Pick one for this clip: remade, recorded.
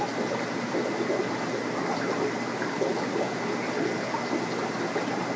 recorded